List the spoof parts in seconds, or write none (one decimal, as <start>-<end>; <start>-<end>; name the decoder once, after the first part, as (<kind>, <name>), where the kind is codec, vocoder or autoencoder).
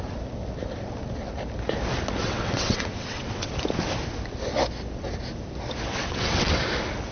2.2-3.5 (vocoder, WaveNeXt); 5.9-6.6